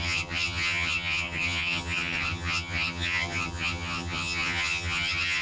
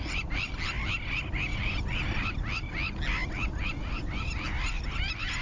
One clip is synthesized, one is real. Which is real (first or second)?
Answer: second